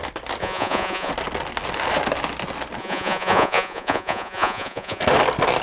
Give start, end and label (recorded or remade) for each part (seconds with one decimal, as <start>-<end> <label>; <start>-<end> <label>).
0.0-0.4 recorded; 0.4-1.1 remade; 1.1-2.8 recorded; 2.8-5.0 remade; 5.0-5.6 recorded